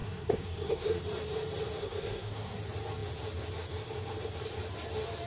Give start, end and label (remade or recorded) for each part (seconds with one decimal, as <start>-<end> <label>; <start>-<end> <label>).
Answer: 0.0-1.0 remade; 1.0-1.8 recorded; 1.8-2.6 remade; 2.6-5.3 recorded